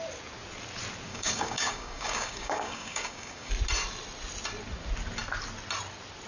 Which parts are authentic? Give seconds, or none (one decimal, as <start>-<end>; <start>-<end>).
0.0-1.1; 3.5-6.3

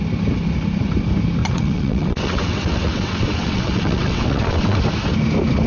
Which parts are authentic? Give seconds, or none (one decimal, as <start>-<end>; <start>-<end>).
0.0-1.4; 4.8-5.7

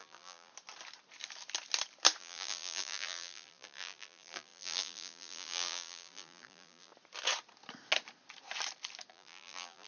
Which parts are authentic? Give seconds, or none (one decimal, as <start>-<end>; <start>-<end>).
0.5-2.2; 6.9-9.1